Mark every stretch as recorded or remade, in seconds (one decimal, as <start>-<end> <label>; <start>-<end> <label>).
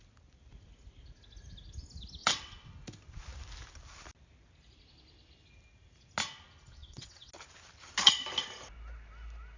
0.0-2.2 recorded; 2.2-2.7 remade; 2.7-6.8 recorded; 6.8-7.3 remade; 7.3-9.6 recorded